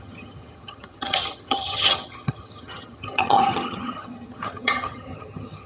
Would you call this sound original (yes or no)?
no